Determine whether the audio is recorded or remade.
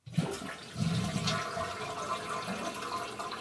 recorded